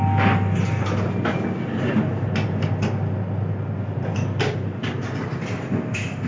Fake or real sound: real